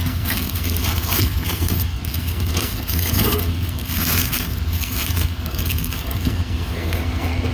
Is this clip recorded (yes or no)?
no